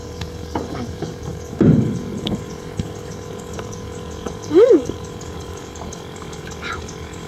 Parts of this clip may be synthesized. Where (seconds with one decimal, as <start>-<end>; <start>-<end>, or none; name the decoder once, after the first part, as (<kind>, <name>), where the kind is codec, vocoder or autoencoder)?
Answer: 0.0-7.3 (codec, DAC)